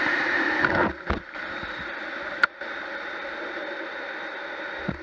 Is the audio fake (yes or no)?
no